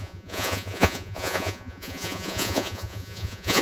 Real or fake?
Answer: fake